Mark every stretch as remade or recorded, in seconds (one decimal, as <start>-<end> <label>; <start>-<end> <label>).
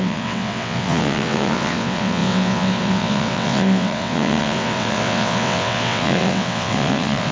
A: 0.0-7.3 remade